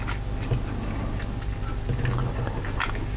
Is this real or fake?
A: real